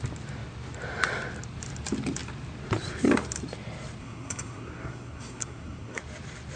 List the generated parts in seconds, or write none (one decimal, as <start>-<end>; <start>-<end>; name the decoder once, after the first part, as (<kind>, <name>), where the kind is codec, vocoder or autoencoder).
4.0-6.0 (codec, SNAC)